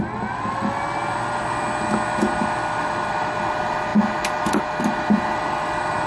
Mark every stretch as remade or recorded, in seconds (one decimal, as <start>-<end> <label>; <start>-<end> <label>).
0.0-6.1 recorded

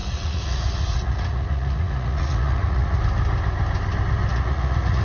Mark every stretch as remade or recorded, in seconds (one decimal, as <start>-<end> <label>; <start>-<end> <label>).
0.0-3.0 remade; 3.0-4.3 recorded; 4.3-5.0 remade

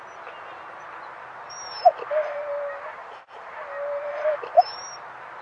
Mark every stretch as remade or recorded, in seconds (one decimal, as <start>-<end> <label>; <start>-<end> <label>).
0.0-5.4 recorded